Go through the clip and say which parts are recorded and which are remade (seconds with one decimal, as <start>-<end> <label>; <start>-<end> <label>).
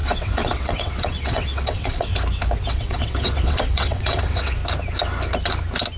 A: 0.0-2.1 remade; 2.1-2.7 recorded; 2.7-4.6 remade; 4.6-6.0 recorded